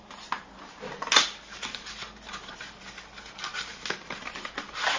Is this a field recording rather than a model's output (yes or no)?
yes